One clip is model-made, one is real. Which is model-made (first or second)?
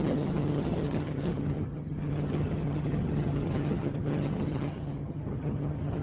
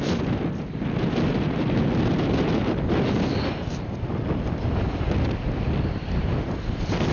first